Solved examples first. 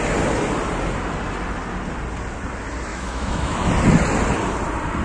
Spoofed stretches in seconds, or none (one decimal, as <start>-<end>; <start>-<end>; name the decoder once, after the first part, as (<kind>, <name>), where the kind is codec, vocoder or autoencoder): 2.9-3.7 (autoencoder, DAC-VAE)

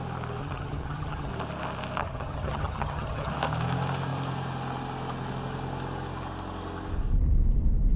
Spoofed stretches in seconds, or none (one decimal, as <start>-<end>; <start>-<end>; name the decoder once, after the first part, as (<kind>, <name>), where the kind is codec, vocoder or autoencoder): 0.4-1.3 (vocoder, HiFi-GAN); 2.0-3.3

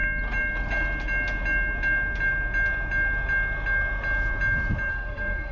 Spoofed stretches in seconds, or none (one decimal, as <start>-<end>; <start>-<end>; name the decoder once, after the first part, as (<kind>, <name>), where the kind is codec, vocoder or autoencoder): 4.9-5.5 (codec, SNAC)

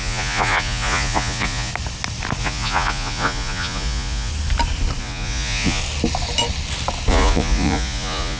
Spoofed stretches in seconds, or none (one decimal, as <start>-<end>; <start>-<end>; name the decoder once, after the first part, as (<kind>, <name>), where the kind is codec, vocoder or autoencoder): 0.0-1.7 (vocoder, Vocos); 2.4-4.3; 5.0-5.8; 7.1-8.4

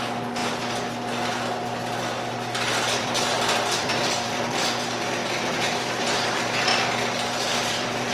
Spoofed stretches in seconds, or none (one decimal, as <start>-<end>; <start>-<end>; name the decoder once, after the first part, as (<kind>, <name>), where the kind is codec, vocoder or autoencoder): 0.4-4.8 (vocoder, BigVGAN v2); 5.2-6.0; 6.7-8.1

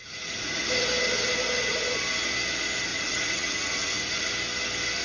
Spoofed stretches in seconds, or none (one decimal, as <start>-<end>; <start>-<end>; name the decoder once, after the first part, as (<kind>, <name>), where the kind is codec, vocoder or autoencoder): 0.0-0.6 (vocoder, Vocos); 2.9-4.3